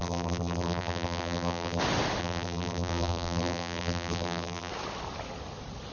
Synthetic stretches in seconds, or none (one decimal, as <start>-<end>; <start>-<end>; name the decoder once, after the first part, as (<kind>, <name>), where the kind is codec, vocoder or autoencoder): 0.0-1.8 (vocoder, BigVGAN v2); 2.2-4.7